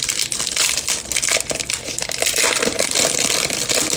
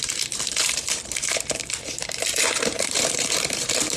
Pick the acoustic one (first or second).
first